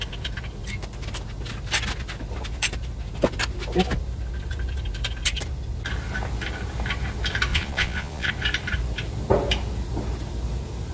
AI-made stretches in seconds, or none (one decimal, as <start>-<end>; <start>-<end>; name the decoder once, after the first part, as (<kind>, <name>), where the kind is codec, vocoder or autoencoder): 7.5-8.3 (vocoder, Vocos)